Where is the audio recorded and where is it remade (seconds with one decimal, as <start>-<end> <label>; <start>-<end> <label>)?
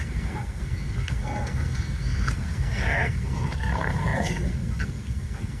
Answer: 0.0-5.6 remade